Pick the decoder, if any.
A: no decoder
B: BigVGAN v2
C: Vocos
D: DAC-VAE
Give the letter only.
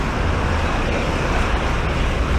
A